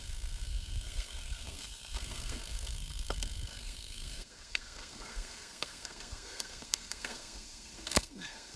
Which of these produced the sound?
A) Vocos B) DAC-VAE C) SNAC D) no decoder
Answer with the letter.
C